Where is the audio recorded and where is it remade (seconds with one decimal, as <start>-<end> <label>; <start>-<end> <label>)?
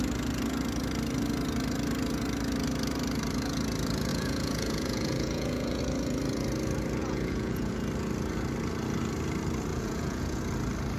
0.0-4.1 recorded; 4.1-5.8 remade; 5.8-7.0 recorded; 7.0-7.7 remade; 7.7-9.7 recorded; 9.7-10.4 remade; 10.4-11.0 recorded